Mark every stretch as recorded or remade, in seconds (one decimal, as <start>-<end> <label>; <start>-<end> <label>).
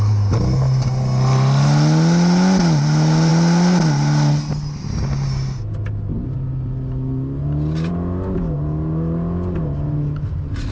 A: 0.0-10.7 recorded